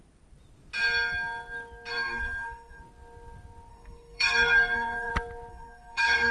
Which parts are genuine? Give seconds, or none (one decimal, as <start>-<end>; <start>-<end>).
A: 0.0-1.9; 2.8-3.7; 5.1-5.5